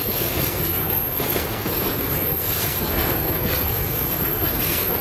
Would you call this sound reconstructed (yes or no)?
yes